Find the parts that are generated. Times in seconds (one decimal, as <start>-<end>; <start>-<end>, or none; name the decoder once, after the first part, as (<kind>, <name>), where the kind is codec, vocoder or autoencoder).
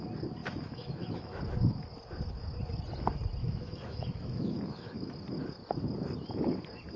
0.4-1.4 (autoencoder, DAC-VAE); 3.4-5.1